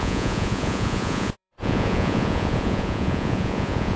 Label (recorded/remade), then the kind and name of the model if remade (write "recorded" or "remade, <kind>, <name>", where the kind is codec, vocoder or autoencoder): remade, vocoder, Vocos